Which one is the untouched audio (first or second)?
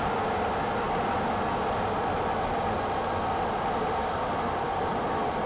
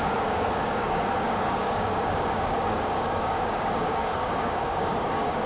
first